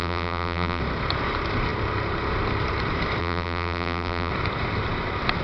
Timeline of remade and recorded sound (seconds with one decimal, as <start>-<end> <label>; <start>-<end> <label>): 0.0-0.8 remade; 0.8-3.2 recorded; 3.2-4.3 remade; 4.3-5.4 recorded